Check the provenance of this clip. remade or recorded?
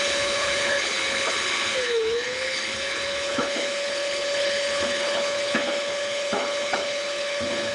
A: remade